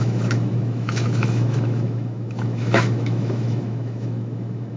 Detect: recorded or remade remade